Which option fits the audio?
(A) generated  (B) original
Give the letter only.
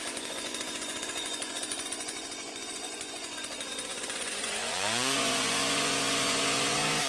A